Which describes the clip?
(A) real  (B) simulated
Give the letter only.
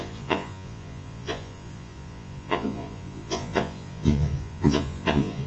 B